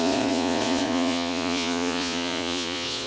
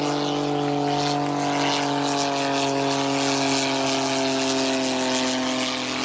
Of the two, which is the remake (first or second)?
first